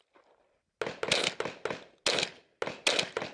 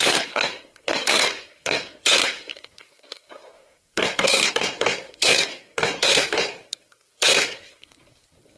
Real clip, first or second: first